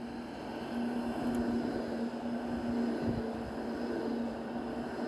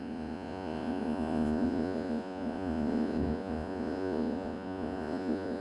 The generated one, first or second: second